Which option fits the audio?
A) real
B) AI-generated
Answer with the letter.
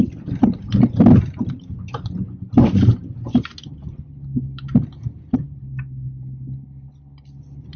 A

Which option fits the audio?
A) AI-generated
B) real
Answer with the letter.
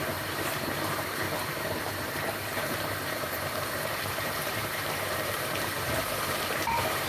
A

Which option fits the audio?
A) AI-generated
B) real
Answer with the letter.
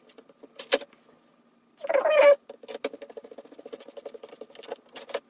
B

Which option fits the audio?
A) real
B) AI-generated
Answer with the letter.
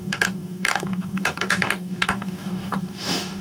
B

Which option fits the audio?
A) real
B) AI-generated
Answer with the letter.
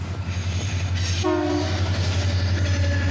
A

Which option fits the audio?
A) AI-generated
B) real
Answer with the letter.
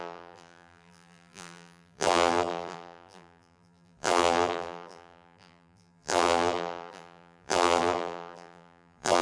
A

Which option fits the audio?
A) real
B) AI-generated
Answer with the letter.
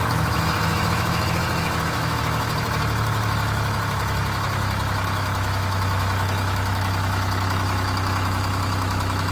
B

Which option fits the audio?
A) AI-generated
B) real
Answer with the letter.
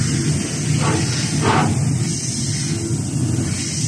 B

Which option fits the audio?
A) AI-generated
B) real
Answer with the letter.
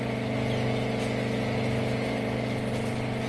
B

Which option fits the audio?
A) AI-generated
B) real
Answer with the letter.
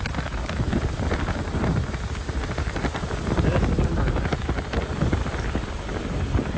B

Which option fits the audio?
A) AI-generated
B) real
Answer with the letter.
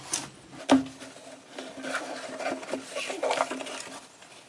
B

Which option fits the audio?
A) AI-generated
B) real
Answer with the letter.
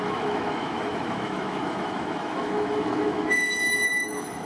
A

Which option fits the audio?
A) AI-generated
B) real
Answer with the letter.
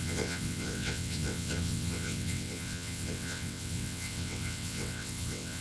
A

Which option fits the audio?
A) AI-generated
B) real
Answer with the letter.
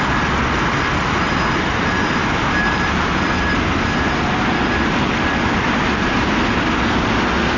B